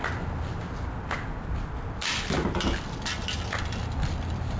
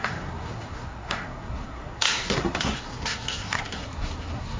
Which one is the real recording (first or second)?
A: first